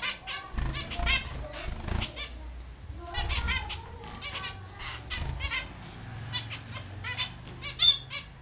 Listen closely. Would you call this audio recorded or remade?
recorded